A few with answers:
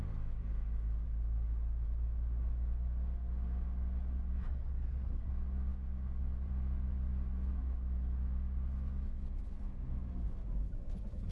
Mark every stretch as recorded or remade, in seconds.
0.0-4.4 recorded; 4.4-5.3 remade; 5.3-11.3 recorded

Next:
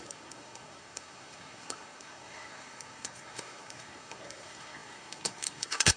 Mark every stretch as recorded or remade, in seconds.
0.0-6.0 remade

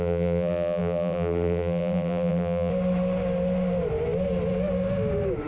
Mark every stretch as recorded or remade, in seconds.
0.0-2.7 remade; 2.7-5.5 recorded

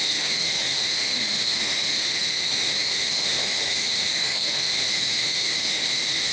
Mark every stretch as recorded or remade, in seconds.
0.0-6.3 remade

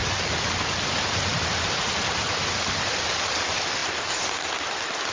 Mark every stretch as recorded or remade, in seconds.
0.0-5.1 recorded

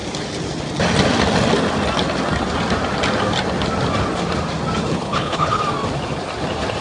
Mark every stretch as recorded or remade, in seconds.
0.0-4.9 recorded; 4.9-5.6 remade; 5.6-6.8 recorded